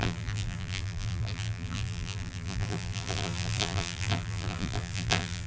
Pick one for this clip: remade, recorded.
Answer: remade